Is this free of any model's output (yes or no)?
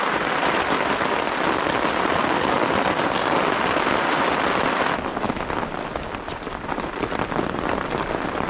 yes